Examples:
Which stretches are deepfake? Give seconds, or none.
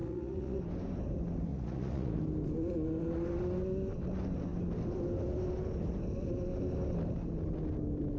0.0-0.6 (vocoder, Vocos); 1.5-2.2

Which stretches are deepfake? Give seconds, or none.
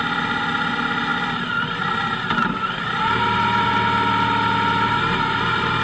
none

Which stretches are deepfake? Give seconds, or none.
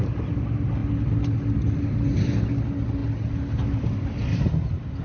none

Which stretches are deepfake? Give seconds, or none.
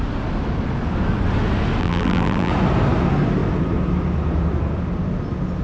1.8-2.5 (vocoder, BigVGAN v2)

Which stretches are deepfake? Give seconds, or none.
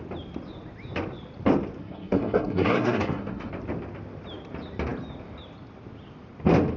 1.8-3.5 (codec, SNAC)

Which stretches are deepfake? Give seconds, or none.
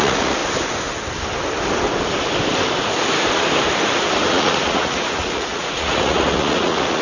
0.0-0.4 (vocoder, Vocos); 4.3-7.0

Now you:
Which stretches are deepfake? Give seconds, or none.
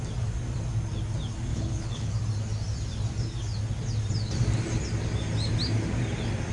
1.5-2.1 (codec, HILCodec)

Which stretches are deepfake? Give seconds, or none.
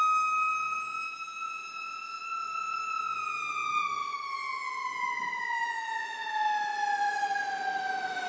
none